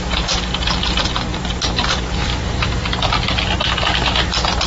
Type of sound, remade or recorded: recorded